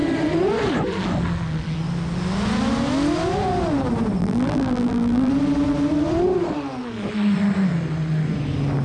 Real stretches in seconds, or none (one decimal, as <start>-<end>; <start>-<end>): 0.0-4.2; 5.3-8.8